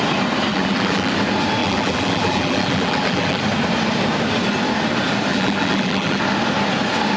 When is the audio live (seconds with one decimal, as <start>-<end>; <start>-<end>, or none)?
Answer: 0.0-0.5; 1.1-1.6; 3.4-5.3; 6.2-7.2